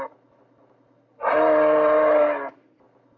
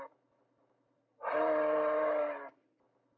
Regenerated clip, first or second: second